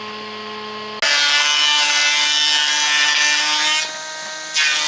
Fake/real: real